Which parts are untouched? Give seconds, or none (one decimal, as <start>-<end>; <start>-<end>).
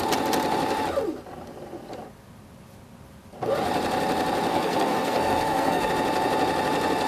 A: 0.0-4.5; 5.9-7.1